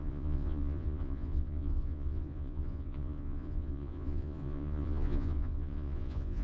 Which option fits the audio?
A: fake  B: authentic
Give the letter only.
A